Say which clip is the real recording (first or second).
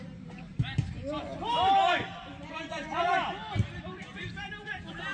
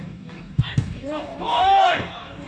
first